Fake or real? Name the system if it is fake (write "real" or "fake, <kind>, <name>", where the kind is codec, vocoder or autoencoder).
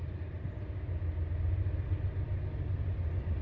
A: real